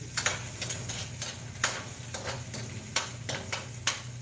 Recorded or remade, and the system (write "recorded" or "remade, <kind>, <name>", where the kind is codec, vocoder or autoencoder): recorded